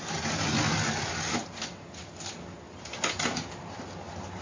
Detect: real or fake real